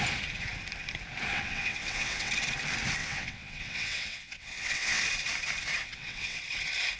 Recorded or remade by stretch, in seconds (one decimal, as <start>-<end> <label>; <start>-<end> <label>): 0.0-1.3 recorded; 1.3-2.3 remade; 2.3-3.0 recorded; 3.0-5.0 remade; 5.0-5.8 recorded; 5.8-6.4 remade; 6.4-7.0 recorded